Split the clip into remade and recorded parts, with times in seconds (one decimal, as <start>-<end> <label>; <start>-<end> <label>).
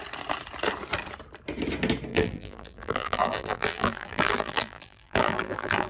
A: 0.0-2.1 recorded; 2.1-5.9 remade